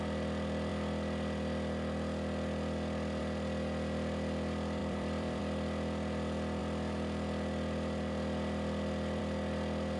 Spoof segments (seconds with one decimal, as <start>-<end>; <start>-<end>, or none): 4.8-5.4